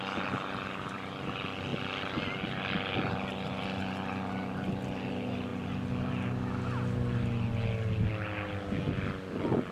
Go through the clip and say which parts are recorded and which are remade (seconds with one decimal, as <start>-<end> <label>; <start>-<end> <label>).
0.0-9.7 recorded